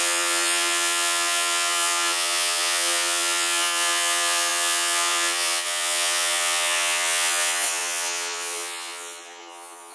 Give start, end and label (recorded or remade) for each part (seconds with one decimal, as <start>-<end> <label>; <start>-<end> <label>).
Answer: 0.0-9.9 remade